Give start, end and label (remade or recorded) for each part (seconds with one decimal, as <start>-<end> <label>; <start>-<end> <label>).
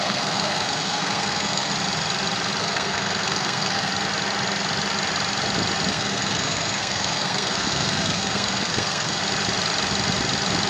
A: 0.0-1.7 remade; 1.7-2.6 recorded; 2.6-3.9 remade; 3.9-5.9 recorded; 5.9-9.2 remade; 9.2-10.7 recorded